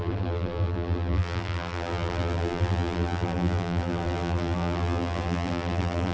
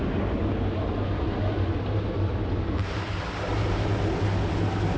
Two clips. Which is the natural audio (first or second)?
second